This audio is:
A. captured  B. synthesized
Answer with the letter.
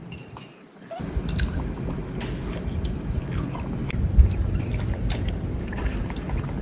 A